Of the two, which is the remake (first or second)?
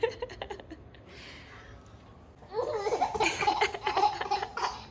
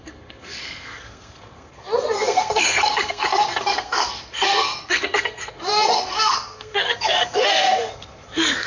second